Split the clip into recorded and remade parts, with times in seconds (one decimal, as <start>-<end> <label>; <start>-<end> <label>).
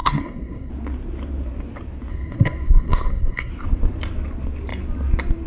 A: 0.0-0.7 remade; 0.7-2.1 recorded; 2.1-3.5 remade; 3.5-5.5 recorded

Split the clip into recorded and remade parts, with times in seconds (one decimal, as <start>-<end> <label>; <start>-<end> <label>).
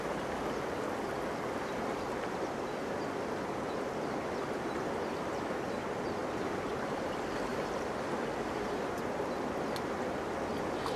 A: 0.0-6.2 recorded; 6.2-7.1 remade; 7.1-7.5 recorded; 7.5-9.3 remade; 9.3-11.0 recorded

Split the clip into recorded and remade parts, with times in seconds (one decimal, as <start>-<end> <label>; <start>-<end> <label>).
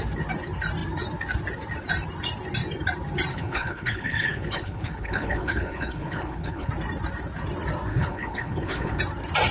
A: 0.0-3.3 recorded; 3.3-6.7 remade; 6.7-7.9 recorded; 7.9-9.0 remade; 9.0-9.5 recorded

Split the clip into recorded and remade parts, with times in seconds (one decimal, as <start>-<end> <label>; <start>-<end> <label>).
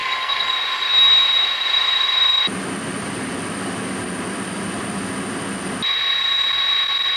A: 0.0-0.5 remade; 0.5-7.2 recorded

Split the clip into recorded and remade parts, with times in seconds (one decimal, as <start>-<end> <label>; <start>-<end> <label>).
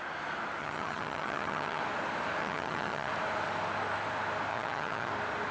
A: 0.0-0.6 recorded; 0.6-1.8 remade; 1.8-2.4 recorded; 2.4-3.1 remade; 3.1-4.5 recorded; 4.5-5.1 remade; 5.1-5.5 recorded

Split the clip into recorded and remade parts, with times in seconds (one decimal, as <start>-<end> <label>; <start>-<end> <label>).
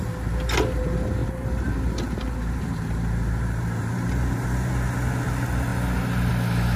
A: 0.0-1.2 recorded; 1.2-4.7 remade; 4.7-6.8 recorded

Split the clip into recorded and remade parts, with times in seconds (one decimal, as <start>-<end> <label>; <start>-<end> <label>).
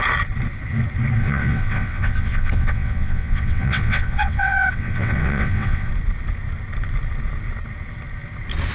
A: 0.0-1.2 recorded; 1.2-5.9 remade; 5.9-8.7 recorded